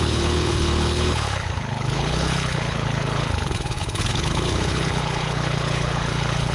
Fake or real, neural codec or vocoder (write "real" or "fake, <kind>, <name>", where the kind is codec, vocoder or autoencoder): fake, codec, HILCodec